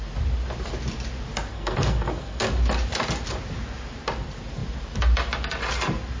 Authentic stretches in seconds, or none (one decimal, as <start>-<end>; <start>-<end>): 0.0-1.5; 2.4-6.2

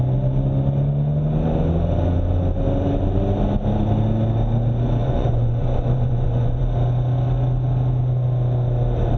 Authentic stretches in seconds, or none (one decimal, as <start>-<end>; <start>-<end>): 0.0-5.0; 6.6-9.2

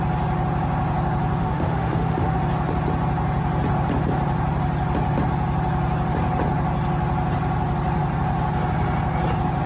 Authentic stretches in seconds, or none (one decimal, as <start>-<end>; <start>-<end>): 0.0-1.4; 2.4-9.7

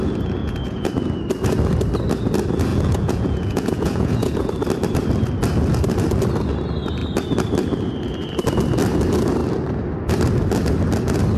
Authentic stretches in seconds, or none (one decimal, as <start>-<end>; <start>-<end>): 0.0-0.4; 0.9-2.7; 4.5-11.4

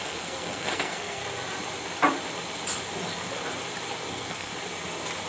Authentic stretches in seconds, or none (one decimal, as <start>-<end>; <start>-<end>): 1.2-4.1; 4.5-5.3